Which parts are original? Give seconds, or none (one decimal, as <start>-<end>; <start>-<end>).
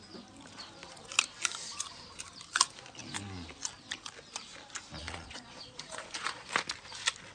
0.0-5.0; 6.5-7.3